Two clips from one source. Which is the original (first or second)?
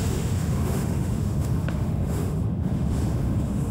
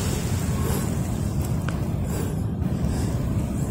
second